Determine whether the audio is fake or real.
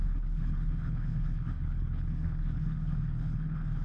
fake